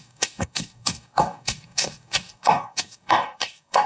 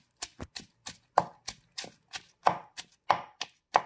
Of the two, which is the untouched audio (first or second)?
second